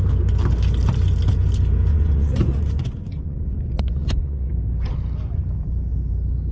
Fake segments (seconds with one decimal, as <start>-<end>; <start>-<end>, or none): 1.9-4.5